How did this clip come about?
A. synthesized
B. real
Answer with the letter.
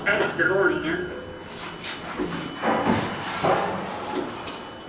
B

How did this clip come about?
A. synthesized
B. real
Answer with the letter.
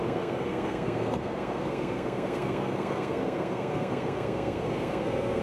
A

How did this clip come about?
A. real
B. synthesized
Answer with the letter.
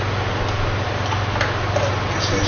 A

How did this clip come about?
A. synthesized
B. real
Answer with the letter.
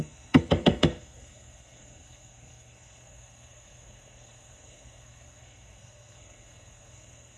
A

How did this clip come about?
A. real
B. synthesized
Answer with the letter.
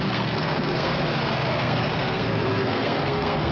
B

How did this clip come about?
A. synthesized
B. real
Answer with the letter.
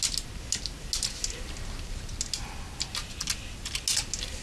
B